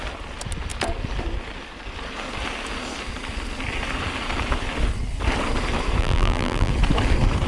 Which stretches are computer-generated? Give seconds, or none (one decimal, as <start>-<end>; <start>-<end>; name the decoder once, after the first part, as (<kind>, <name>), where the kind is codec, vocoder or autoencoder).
6.0-6.7 (vocoder, BigVGAN v2)